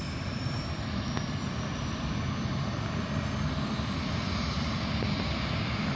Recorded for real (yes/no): yes